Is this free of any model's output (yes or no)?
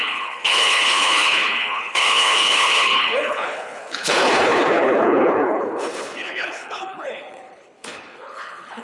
no